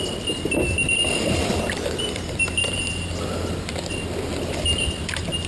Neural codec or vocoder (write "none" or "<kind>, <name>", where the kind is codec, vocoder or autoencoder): vocoder, BigVGAN v2